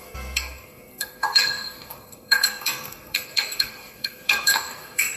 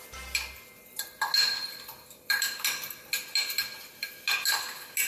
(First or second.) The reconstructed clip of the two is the first